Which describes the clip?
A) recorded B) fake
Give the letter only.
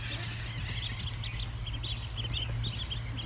A